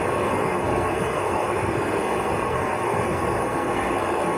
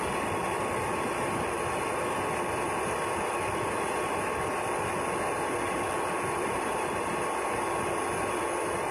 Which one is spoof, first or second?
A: first